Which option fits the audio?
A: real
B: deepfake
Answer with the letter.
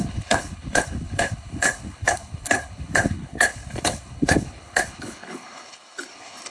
B